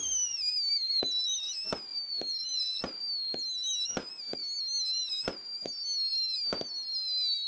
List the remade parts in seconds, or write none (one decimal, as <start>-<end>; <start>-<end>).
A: 1.9-3.0